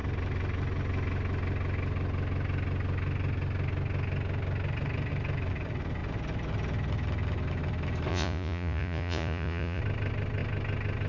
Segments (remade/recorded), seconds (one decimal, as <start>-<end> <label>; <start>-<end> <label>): 0.0-8.1 recorded; 8.1-9.8 remade; 9.8-11.1 recorded